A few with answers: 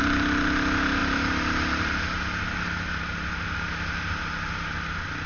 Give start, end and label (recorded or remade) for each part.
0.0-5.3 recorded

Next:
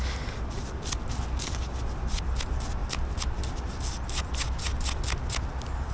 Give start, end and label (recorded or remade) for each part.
0.0-5.9 recorded